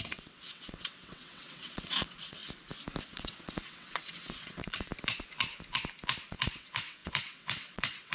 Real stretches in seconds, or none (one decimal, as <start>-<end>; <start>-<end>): 2.4-3.0; 4.9-6.3